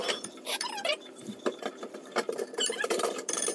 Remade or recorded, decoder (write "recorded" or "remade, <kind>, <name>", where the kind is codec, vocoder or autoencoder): remade, vocoder, BigVGAN v2